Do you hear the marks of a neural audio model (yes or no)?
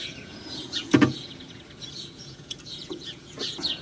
yes